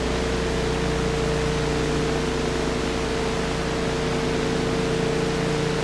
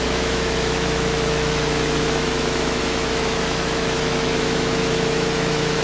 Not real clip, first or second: second